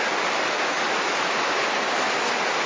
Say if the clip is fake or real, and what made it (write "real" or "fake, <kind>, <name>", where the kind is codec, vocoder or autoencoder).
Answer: real